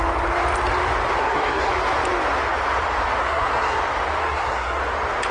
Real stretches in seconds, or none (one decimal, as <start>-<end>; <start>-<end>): 0.0-1.2; 1.7-3.2; 3.8-4.2; 4.8-5.3